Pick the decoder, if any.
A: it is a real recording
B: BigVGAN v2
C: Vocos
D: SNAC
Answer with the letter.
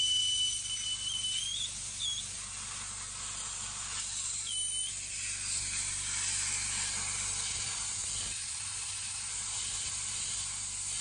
A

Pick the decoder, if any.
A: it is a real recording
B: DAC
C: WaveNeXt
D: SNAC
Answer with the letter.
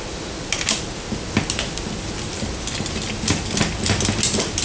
A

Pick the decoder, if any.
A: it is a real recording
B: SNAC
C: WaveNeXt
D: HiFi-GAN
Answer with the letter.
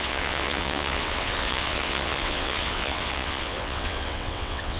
C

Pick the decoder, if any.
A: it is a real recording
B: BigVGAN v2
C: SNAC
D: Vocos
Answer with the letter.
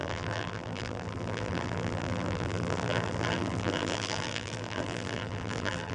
B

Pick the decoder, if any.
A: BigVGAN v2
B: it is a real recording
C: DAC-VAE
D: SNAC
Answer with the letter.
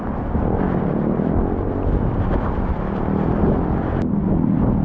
B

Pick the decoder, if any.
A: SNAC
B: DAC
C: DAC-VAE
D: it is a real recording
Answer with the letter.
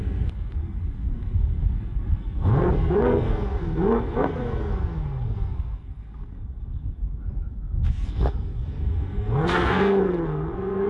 A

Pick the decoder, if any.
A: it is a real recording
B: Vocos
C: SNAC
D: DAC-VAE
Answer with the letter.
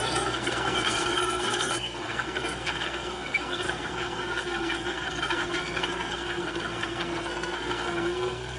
C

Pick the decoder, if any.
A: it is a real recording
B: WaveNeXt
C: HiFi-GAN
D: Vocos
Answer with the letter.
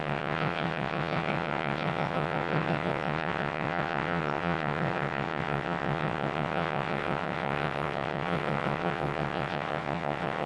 B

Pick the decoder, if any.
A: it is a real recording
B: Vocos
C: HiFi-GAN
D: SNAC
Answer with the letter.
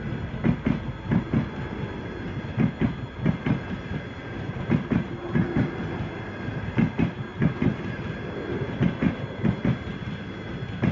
A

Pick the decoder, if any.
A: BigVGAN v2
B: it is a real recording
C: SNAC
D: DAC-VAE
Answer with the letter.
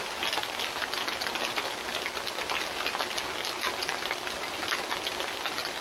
B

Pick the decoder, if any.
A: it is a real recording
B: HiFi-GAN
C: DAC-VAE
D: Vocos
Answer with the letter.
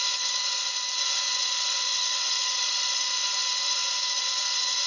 D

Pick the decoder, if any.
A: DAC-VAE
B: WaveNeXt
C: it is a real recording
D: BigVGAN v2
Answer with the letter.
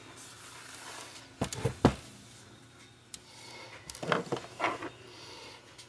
C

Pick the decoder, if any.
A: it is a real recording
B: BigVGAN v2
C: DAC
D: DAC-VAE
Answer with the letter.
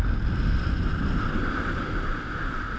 A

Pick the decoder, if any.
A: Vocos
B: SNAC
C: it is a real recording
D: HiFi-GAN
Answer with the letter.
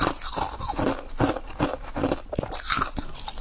C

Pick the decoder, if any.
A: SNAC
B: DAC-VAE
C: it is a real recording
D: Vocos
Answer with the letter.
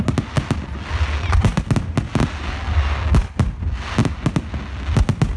C